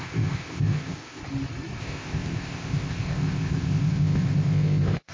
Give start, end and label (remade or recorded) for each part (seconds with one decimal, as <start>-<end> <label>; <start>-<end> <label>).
0.0-1.2 remade; 1.2-1.8 recorded; 1.8-5.1 remade